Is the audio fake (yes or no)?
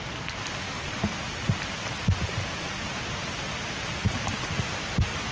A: no